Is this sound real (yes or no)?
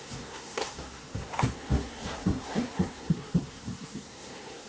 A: no